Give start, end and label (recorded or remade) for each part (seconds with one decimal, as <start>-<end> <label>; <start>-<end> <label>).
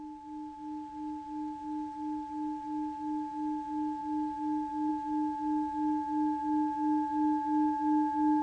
0.0-8.4 recorded